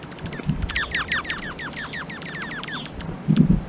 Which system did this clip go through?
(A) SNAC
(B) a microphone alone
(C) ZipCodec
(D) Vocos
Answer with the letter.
B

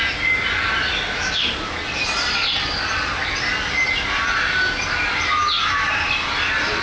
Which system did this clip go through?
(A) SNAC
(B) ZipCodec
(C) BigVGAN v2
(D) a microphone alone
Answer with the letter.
D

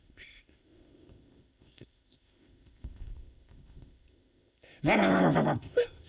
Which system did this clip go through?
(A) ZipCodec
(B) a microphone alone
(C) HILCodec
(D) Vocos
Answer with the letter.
A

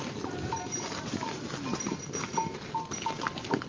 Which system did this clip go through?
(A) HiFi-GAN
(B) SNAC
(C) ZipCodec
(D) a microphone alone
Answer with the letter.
D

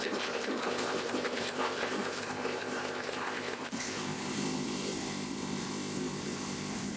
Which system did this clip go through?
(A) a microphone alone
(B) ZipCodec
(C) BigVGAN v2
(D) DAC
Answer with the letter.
B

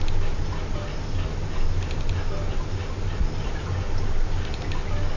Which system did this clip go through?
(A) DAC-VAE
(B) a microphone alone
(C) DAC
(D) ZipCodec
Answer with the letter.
B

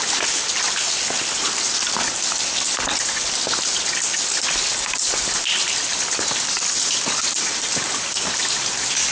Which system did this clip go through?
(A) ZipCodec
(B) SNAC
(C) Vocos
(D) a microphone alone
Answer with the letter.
D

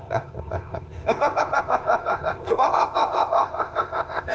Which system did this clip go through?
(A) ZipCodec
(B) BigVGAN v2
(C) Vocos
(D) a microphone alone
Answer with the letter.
A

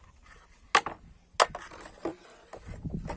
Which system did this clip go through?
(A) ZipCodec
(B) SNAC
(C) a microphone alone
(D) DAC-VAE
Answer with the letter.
C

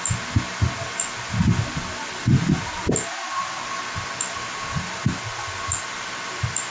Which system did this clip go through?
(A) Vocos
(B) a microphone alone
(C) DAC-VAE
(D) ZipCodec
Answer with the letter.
B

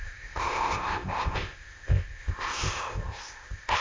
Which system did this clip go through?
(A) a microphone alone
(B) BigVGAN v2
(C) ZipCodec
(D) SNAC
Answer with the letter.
C